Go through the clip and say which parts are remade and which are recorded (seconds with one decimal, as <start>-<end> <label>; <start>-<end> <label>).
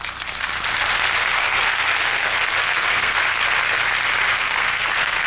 0.0-1.4 recorded; 1.4-3.2 remade; 3.2-4.3 recorded; 4.3-5.3 remade